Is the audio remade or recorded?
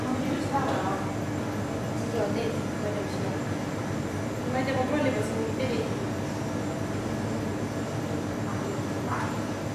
recorded